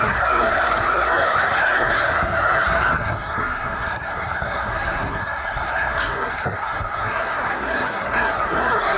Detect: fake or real fake